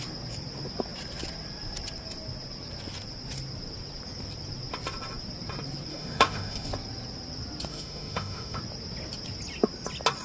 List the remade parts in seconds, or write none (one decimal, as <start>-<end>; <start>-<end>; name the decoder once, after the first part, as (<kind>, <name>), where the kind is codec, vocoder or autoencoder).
5.9-6.7 (autoencoder, DAC-VAE); 7.7-8.6